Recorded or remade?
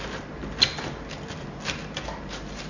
recorded